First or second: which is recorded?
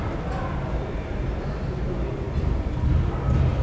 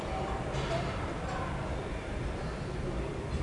first